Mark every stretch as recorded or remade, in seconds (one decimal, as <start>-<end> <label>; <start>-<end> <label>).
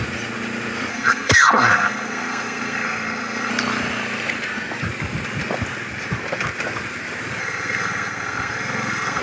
0.0-0.9 recorded; 0.9-3.5 remade; 3.5-7.4 recorded; 7.4-9.2 remade